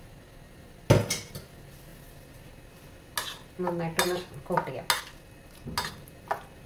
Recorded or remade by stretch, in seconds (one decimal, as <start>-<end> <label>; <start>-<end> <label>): 0.0-6.7 recorded